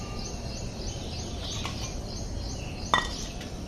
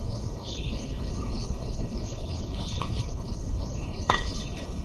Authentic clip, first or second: first